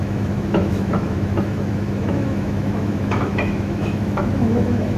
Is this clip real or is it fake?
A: fake